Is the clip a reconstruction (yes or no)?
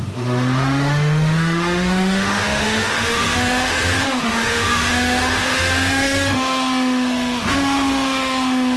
yes